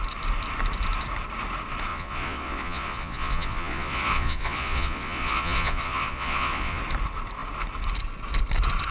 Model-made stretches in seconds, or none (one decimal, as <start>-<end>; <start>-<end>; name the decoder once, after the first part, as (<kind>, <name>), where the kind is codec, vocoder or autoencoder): 1.9-6.8 (vocoder, Vocos)